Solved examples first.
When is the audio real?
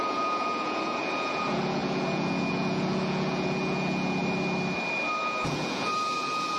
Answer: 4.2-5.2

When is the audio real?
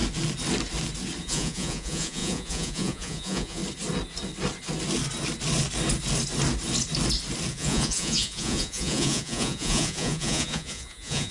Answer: 0.0-1.2; 3.6-7.5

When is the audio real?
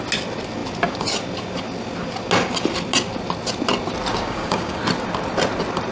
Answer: 0.0-4.1; 4.8-5.9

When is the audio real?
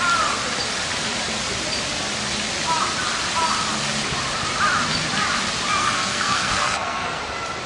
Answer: 0.0-5.8; 7.2-7.7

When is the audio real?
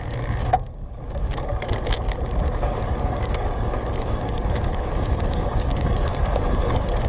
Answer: 1.5-2.4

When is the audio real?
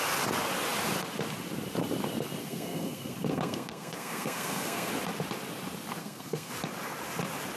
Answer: 0.0-2.4; 4.9-6.0; 6.5-7.6